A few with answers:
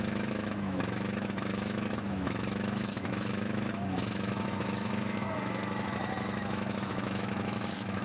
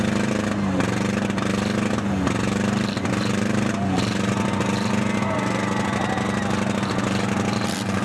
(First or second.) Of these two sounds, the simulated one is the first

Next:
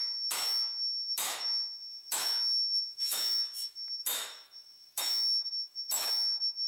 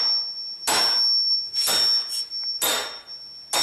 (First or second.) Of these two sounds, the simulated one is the first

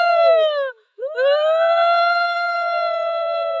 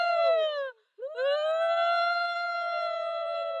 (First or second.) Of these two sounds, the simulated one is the first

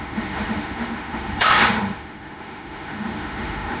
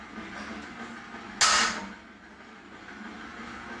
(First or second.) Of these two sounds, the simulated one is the first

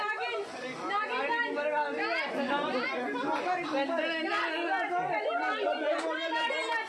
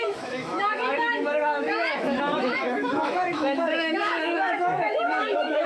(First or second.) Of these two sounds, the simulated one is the second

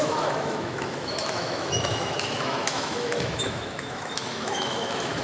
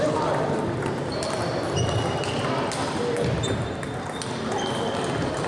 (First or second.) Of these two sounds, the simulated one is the first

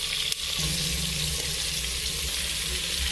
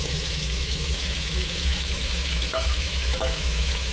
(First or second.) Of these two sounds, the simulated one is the second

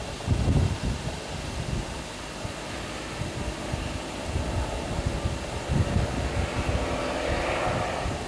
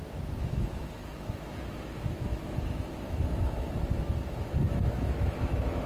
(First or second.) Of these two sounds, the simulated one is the second